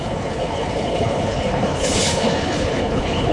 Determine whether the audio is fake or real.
fake